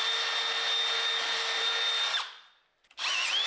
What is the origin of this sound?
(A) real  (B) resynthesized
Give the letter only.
A